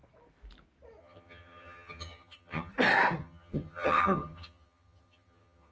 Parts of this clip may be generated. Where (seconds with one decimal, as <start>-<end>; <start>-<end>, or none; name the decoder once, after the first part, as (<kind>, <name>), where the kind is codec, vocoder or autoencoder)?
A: 1.0-2.7 (vocoder, HiFi-GAN); 3.2-5.7

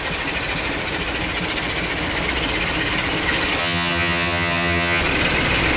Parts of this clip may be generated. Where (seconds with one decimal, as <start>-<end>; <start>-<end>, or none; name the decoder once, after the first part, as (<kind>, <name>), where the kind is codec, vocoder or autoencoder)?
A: 3.6-5.0 (vocoder, HiFi-GAN)

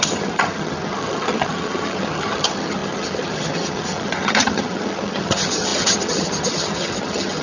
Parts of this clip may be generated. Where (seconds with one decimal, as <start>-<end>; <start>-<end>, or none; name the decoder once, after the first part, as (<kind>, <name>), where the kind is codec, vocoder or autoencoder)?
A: 0.0-7.4 (vocoder, HiFi-GAN)

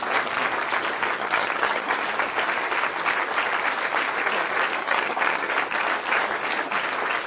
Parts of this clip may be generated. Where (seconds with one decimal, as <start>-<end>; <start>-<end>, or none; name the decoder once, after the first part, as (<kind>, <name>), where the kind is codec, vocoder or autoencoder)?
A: 1.2-1.9 (vocoder, HiFi-GAN); 4.8-5.5

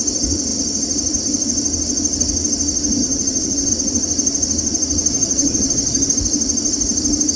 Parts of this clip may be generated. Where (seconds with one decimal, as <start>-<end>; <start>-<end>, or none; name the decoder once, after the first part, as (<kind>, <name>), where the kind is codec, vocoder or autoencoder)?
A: 3.0-3.7 (vocoder, HiFi-GAN); 5.1-6.1